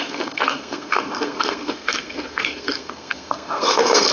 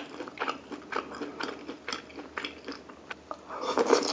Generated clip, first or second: first